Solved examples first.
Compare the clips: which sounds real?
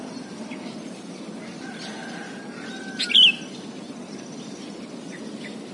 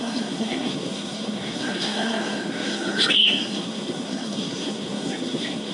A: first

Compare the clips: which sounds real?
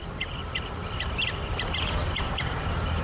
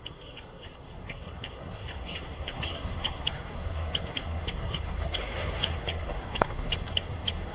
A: first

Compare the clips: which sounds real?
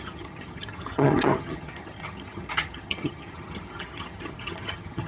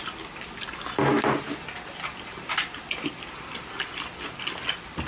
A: second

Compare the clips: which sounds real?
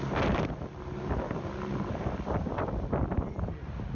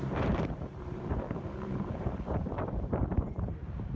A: first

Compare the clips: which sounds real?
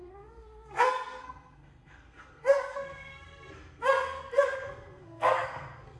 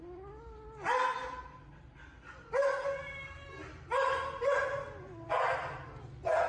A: second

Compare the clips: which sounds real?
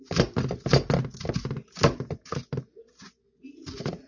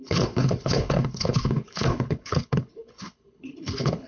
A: first